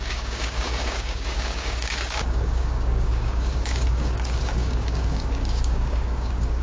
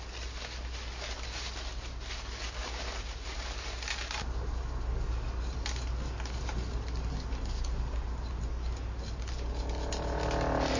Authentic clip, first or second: second